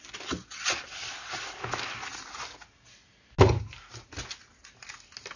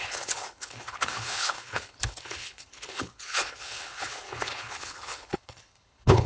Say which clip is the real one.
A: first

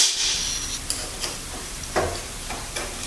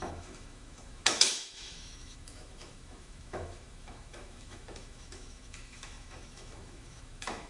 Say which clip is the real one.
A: first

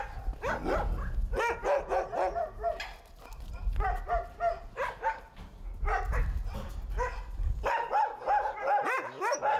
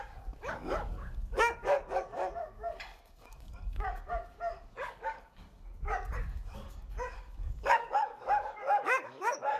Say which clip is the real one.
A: first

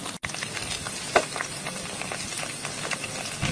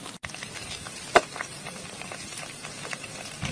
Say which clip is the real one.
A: first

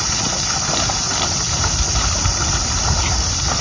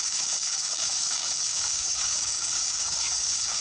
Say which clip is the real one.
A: first